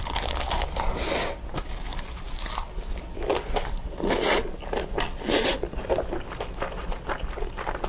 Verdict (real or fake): real